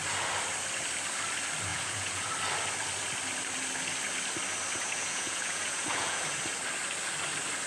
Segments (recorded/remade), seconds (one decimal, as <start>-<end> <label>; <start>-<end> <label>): 0.0-1.7 recorded; 1.7-2.3 remade; 2.3-4.7 recorded; 4.7-6.4 remade; 6.4-7.7 recorded